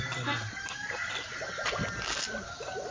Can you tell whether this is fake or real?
real